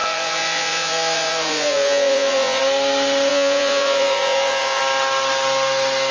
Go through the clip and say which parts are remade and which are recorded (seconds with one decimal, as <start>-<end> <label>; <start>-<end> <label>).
0.0-2.6 remade; 2.6-3.3 recorded; 3.3-4.8 remade; 4.8-6.1 recorded